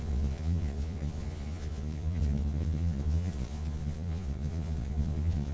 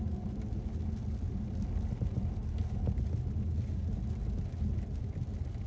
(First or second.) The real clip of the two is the second